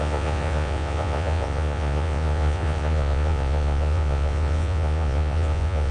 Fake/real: fake